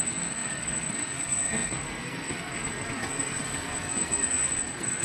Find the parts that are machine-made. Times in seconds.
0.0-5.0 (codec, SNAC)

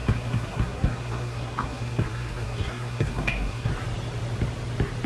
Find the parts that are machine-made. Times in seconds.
0.0-3.7 (codec, SNAC)

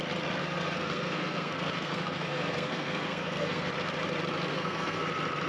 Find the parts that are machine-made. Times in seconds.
0.4-3.7 (codec, SNAC); 4.5-5.0

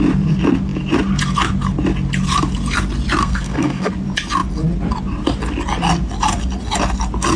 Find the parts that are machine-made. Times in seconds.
3.2-3.9 (codec, SNAC)

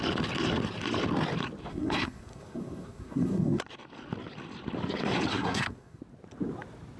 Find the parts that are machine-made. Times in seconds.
1.7-3.6 (codec, SNAC); 5.3-6.0

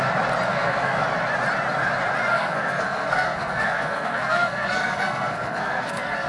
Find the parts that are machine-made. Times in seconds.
0.5-1.0 (codec, SNAC); 2.3-6.3

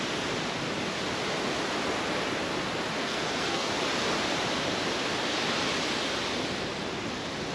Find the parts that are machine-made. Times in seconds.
3.0-3.7 (codec, SNAC)

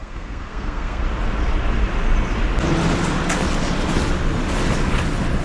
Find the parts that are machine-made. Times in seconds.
0.0-1.0 (codec, SNAC)